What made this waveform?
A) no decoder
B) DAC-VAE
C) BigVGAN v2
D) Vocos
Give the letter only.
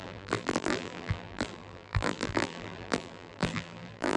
C